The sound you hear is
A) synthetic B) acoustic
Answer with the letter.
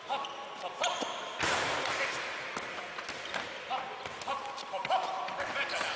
B